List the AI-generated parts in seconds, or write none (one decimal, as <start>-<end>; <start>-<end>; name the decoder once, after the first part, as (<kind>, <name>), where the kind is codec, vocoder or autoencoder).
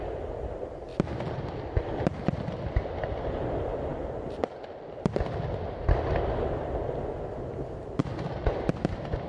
none